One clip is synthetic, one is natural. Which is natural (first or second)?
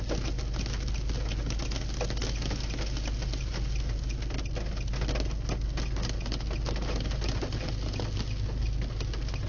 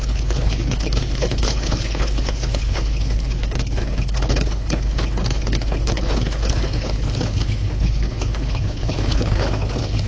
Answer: first